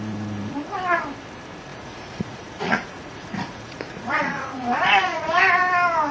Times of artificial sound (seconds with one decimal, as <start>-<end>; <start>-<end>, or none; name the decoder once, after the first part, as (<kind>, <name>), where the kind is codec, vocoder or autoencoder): 1.7-5.4 (vocoder, Vocos)